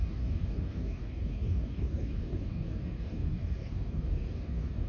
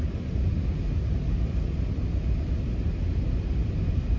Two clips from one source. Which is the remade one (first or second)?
first